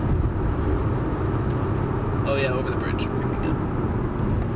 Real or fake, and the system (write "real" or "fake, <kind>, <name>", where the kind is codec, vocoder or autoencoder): real